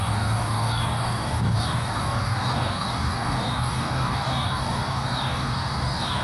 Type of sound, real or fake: fake